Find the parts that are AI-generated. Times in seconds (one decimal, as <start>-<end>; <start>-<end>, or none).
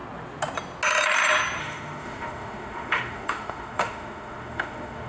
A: 1.6-5.1